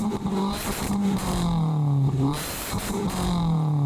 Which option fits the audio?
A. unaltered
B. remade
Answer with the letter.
B